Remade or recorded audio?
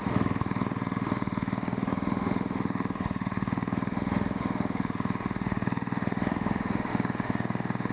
remade